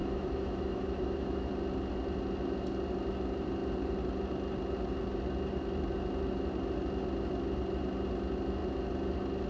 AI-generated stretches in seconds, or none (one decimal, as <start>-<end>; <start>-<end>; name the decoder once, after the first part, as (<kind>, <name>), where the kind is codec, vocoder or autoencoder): 0.0-1.5 (autoencoder, DAC-VAE)

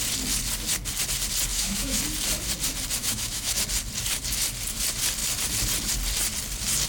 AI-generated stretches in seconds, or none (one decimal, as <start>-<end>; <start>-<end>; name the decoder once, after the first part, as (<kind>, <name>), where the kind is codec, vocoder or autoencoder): 1.5-2.0 (autoencoder, DAC-VAE); 3.0-3.6